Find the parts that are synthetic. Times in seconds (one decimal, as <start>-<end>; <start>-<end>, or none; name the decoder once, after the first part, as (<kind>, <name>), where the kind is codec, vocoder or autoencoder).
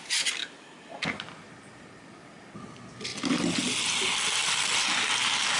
4.4-5.0 (vocoder, BigVGAN v2)